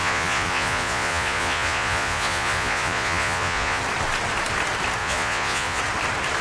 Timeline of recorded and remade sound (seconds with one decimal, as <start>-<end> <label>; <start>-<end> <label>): 0.0-3.8 remade; 3.8-5.0 recorded; 5.0-5.8 remade; 5.8-6.4 recorded